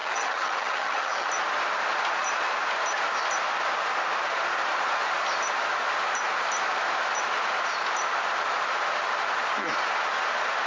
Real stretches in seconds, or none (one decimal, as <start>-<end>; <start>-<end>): 1.3-10.7